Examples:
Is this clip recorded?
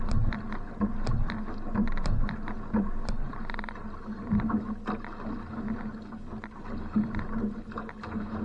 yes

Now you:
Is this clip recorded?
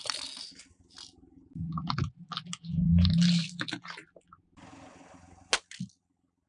yes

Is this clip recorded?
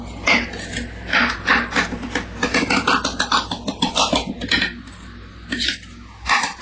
yes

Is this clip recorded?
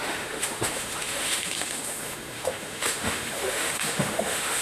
no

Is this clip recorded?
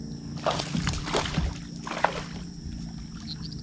yes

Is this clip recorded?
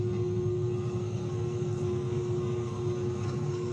no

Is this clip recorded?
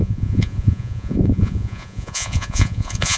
no